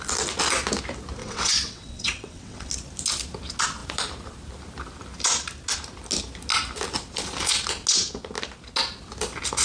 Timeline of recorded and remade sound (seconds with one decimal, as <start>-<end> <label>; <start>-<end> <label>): 0.0-1.2 recorded; 1.2-2.7 remade; 2.7-9.6 recorded